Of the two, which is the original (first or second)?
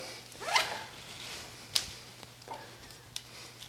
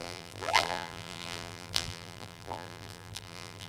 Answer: first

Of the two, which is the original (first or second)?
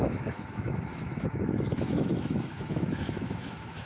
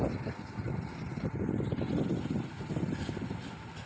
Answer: second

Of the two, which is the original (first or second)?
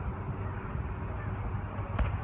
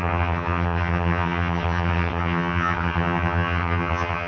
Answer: first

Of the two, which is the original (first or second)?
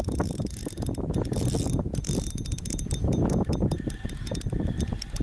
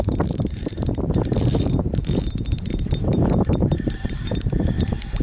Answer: first